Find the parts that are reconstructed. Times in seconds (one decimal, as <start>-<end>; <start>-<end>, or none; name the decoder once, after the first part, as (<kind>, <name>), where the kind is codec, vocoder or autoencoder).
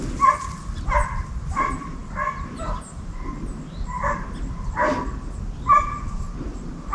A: none